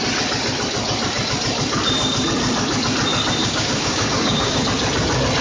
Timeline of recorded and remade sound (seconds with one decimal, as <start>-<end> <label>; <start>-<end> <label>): 0.0-3.4 recorded; 3.4-4.6 remade; 4.6-5.4 recorded